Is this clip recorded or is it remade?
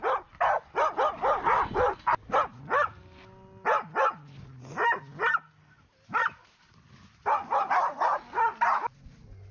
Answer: recorded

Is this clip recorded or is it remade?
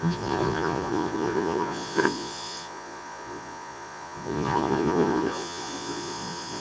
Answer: remade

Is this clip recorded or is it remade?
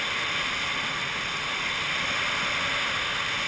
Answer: recorded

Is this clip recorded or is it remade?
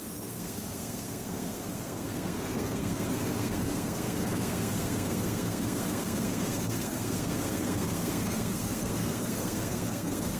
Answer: remade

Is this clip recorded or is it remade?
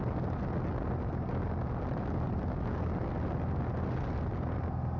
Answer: recorded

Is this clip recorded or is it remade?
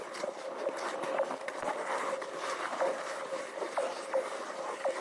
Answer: recorded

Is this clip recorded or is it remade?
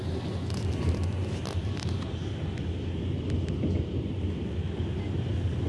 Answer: recorded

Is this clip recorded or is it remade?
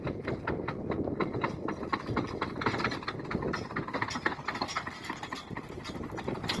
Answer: recorded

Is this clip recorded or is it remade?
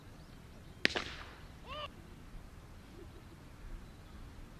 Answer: recorded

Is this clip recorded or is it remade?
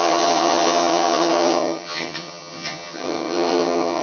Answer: remade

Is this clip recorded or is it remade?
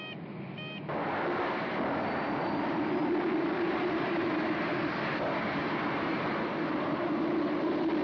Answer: recorded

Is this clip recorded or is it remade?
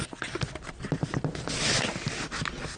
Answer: recorded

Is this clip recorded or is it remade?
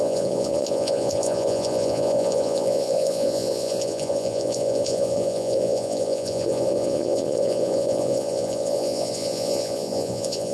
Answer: remade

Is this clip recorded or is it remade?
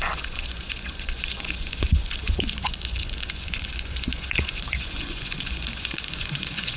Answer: remade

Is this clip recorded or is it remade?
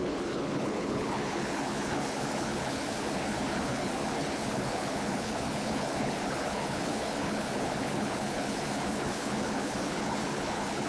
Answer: remade